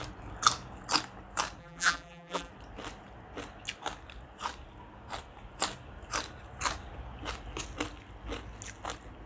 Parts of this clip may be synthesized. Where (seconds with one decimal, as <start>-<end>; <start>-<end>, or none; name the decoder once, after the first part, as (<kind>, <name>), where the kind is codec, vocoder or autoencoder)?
1.6-2.5 (vocoder, BigVGAN v2)

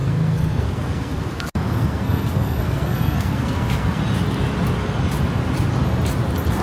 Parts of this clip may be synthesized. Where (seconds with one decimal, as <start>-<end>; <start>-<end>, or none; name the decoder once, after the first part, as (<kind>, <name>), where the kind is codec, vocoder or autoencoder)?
0.0-4.0 (codec, SNAC)

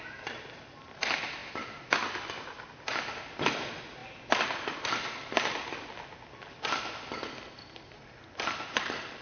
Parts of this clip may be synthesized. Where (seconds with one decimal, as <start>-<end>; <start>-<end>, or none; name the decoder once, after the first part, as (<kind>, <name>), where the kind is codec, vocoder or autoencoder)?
none

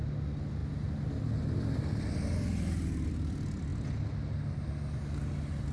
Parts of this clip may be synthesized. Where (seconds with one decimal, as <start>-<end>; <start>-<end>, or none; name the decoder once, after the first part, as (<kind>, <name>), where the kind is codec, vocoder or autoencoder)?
none

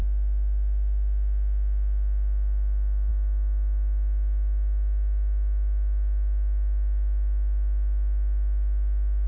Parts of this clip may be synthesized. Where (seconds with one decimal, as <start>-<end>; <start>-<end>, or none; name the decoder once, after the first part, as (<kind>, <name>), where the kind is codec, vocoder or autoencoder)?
none

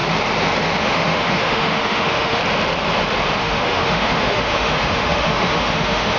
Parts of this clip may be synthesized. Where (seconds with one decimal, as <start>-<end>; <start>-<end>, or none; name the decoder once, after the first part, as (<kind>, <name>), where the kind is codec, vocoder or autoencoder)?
0.8-2.4 (autoencoder, DAC-VAE); 3.4-6.2

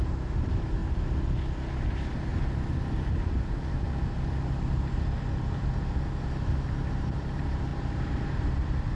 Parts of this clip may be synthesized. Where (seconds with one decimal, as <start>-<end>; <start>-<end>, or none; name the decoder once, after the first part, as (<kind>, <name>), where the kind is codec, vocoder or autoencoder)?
0.0-0.8 (vocoder, BigVGAN v2); 1.9-2.3; 6.9-8.9

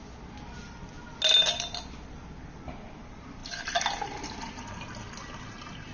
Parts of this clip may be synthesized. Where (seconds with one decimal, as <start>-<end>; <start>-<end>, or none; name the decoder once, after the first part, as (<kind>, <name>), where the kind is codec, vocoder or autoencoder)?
none